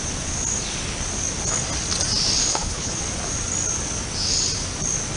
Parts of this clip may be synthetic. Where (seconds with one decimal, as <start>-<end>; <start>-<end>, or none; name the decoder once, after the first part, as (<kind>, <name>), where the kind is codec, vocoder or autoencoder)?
2.5-3.0 (codec, HILCodec)